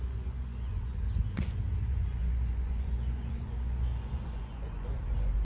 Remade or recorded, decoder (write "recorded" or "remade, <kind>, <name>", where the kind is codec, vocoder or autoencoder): remade, vocoder, Vocos